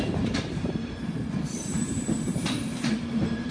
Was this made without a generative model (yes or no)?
no